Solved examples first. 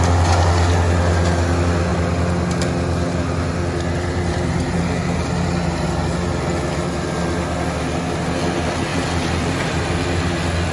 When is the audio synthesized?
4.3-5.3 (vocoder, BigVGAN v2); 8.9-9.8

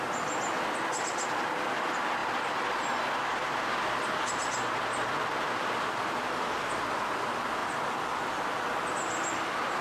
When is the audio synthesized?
none

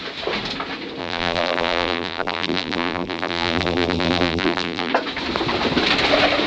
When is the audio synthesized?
1.0-4.9 (vocoder, BigVGAN v2)